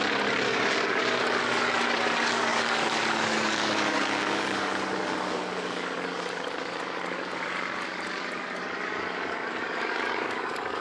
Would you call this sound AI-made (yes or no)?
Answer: yes